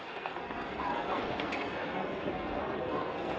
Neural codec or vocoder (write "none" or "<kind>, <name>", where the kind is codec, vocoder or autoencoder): codec, SNAC